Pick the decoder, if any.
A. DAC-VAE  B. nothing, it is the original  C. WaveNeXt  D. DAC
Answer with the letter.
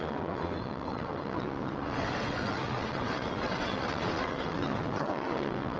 C